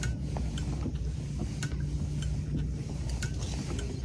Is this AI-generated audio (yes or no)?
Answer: no